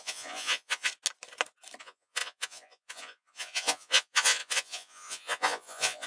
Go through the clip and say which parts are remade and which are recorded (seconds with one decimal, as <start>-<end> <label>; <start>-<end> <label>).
0.0-0.9 remade; 0.9-1.8 recorded; 1.8-6.1 remade